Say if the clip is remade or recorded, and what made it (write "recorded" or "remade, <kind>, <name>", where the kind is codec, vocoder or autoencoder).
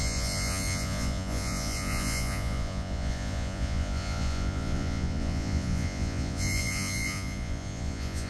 remade, vocoder, Vocos